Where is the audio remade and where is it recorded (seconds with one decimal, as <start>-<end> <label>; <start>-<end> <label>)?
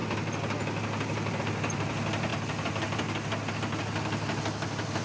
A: 0.0-5.0 recorded